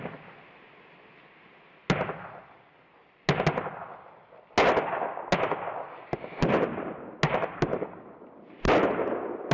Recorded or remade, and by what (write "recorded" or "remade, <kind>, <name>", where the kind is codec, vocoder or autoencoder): recorded